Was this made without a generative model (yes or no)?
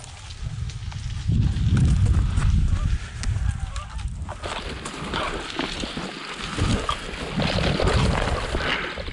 yes